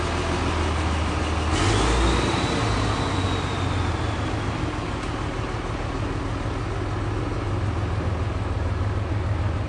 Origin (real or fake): real